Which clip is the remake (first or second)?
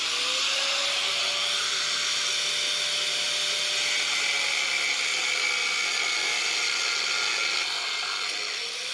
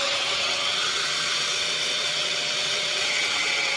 second